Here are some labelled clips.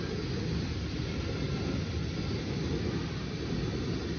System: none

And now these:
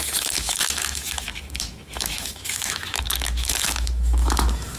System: autoencoder, DAC-VAE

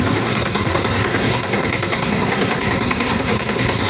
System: codec, SNAC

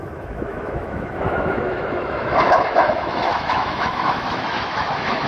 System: autoencoder, DAC-VAE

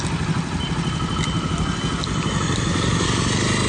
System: none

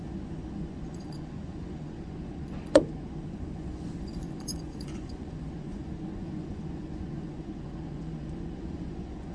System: vocoder, Vocos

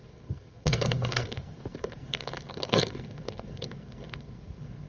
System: codec, SNAC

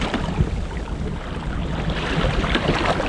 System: none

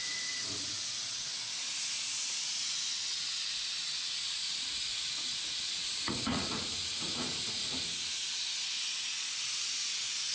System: vocoder, Vocos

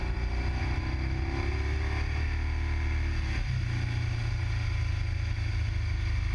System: none